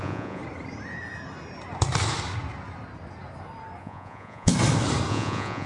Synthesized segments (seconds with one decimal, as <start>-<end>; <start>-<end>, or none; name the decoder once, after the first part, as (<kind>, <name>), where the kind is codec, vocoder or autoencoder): 0.0-0.4 (vocoder, Vocos); 3.8-4.5; 5.1-5.7